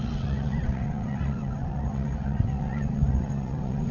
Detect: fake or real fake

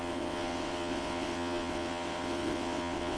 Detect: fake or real fake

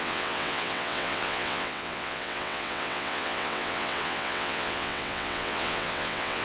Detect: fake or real fake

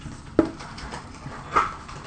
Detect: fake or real real